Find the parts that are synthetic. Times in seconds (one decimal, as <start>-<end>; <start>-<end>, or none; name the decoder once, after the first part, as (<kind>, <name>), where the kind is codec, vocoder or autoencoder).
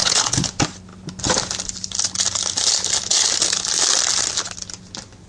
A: 0.0-0.5 (codec, HILCodec)